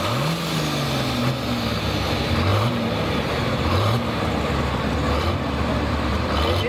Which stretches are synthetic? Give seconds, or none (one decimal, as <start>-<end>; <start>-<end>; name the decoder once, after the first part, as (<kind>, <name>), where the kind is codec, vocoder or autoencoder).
2.5-4.2 (vocoder, BigVGAN v2)